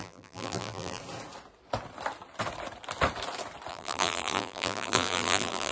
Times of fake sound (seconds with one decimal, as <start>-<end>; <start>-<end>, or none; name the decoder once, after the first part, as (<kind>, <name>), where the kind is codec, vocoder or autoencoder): 0.0-1.0 (vocoder, BigVGAN v2); 3.7-5.7